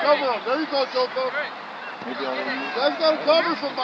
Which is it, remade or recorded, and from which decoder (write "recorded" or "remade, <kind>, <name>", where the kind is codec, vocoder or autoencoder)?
recorded